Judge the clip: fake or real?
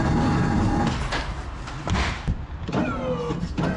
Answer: real